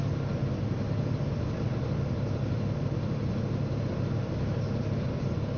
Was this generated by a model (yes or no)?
no